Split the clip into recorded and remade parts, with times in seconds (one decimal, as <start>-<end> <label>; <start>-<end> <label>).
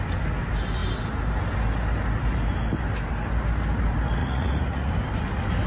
0.0-4.2 recorded; 4.2-4.9 remade; 4.9-5.7 recorded